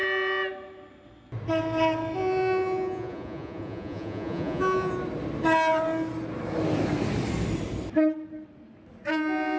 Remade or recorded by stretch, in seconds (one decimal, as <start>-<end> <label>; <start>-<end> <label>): 0.0-2.2 recorded; 2.2-4.9 remade; 4.9-9.6 recorded